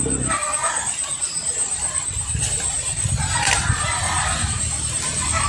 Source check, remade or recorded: recorded